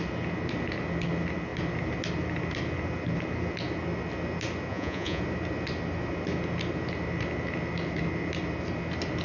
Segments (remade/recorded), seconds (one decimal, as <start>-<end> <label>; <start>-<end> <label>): 0.0-4.7 recorded; 4.7-5.2 remade; 5.2-9.2 recorded